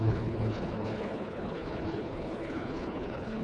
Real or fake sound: fake